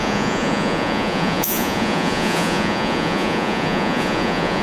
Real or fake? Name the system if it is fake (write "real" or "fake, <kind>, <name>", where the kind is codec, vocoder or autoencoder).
fake, vocoder, Vocos